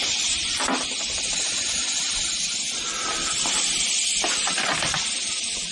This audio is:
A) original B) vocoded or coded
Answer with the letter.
A